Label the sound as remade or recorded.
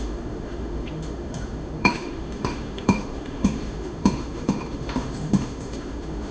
remade